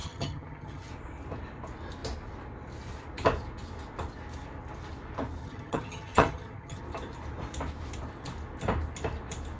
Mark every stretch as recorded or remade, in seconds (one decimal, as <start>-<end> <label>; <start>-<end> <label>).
0.0-0.9 remade; 0.9-5.4 recorded; 5.4-6.8 remade; 6.8-9.6 recorded